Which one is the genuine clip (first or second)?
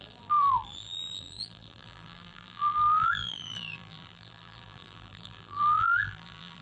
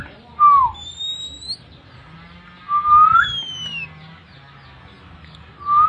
second